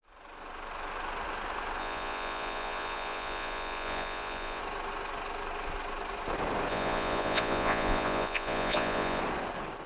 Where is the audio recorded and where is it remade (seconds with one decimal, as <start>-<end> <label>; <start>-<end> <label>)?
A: 0.0-1.8 recorded; 1.8-4.6 remade; 4.6-6.7 recorded; 6.7-9.2 remade; 9.2-9.9 recorded